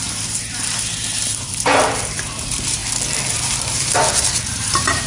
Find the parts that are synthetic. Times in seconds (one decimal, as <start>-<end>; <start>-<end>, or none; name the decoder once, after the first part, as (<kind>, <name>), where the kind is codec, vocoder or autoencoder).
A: 0.0-2.8 (vocoder, BigVGAN v2); 3.3-5.1